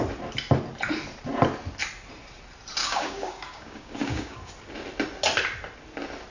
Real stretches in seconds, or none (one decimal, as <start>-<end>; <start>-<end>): 0.0-2.8; 4.5-6.3